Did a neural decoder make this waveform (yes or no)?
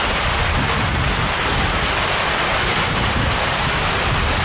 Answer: no